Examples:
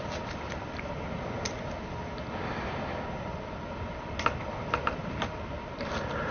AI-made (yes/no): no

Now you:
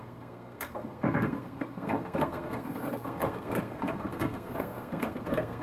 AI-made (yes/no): yes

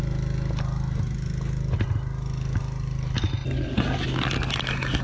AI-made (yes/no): no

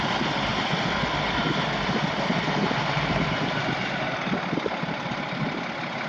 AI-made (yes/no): no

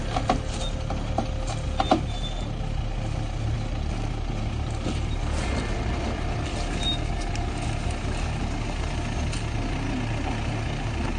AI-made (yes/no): no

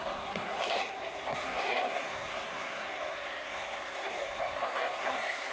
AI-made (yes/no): yes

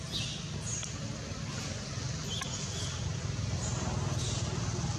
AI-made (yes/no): no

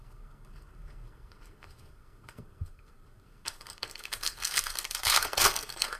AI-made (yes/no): yes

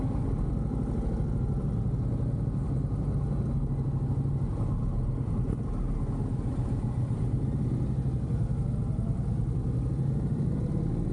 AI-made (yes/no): no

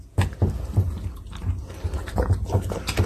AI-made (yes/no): no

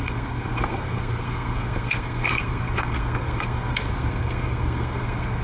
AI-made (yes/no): yes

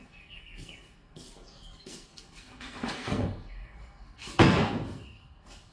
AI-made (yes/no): yes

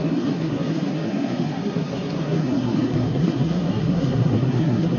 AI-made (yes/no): yes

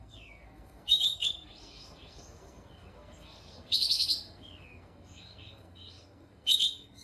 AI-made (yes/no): yes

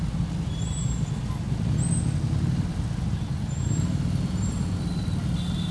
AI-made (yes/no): no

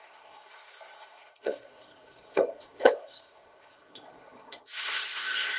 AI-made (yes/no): yes